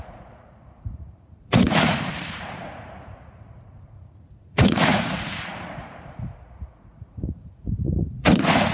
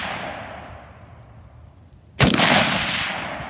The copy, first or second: first